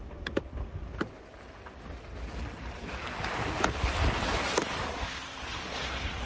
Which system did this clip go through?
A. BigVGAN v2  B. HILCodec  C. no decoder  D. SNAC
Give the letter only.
C